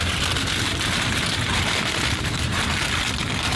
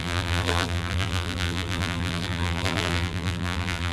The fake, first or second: second